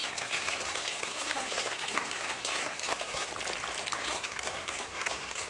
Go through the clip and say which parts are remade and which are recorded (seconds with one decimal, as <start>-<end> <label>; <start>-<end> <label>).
0.0-3.3 remade; 3.3-4.0 recorded; 4.0-5.5 remade